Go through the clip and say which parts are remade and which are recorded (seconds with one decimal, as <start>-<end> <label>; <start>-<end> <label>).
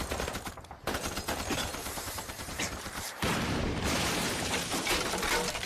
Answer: 0.0-1.8 recorded; 1.8-4.9 remade; 4.9-5.7 recorded